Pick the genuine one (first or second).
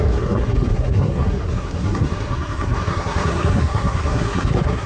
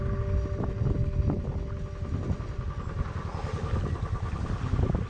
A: second